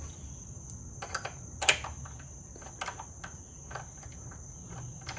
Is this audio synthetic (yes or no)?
no